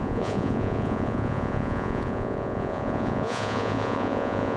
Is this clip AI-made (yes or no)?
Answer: yes